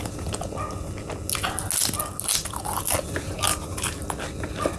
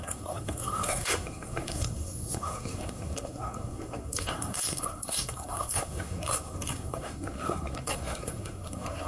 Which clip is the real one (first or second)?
first